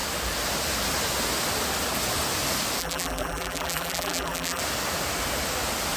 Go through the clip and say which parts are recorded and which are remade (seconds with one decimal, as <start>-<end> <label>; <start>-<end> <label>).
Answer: 0.0-2.8 recorded; 2.8-4.6 remade; 4.6-6.0 recorded